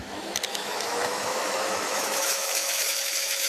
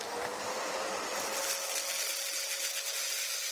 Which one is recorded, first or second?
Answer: second